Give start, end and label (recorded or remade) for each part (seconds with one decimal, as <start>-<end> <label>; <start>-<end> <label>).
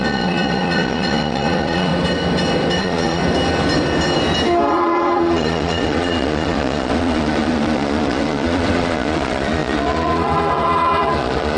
0.0-1.9 remade; 1.9-2.8 recorded; 2.8-3.2 remade; 3.2-4.7 recorded; 4.7-11.6 remade